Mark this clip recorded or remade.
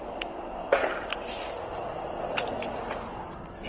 remade